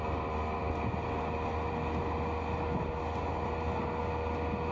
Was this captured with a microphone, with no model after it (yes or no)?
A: yes